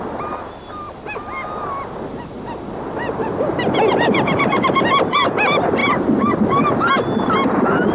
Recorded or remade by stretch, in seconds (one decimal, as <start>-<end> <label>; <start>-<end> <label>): 0.0-7.9 recorded